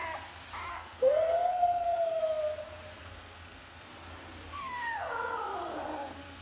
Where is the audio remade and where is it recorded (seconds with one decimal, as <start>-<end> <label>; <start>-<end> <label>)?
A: 0.0-0.7 recorded; 0.7-2.2 remade; 2.2-3.0 recorded; 3.0-3.9 remade; 3.9-4.5 recorded; 4.5-6.4 remade